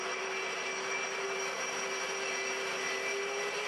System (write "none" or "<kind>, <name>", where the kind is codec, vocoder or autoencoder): none